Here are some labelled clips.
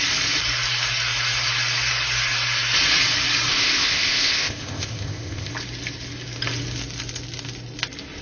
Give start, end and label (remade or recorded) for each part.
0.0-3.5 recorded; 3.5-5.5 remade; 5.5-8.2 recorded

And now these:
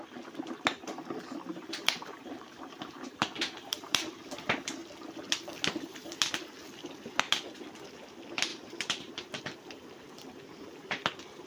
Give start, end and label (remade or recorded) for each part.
0.0-1.5 recorded; 1.5-4.2 remade; 4.2-8.5 recorded; 8.5-9.4 remade; 9.4-11.5 recorded

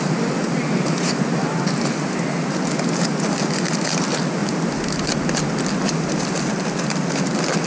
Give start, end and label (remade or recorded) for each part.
0.0-7.7 recorded

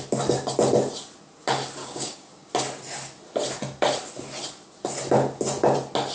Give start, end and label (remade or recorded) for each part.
0.0-1.8 recorded; 1.8-2.5 remade; 2.5-6.1 recorded

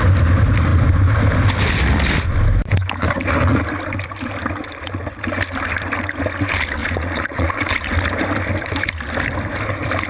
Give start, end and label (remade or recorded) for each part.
0.0-6.8 recorded; 6.8-7.7 remade; 7.7-10.1 recorded